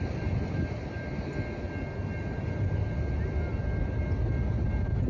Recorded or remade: recorded